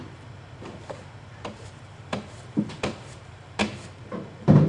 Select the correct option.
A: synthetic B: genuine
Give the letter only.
A